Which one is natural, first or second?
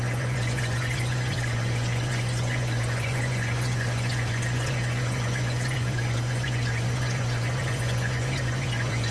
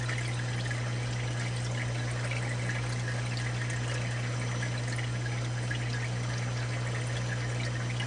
second